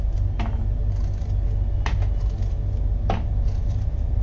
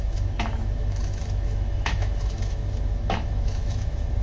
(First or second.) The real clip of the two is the first